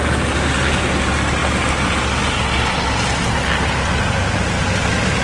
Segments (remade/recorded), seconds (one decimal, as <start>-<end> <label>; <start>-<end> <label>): 0.0-5.2 recorded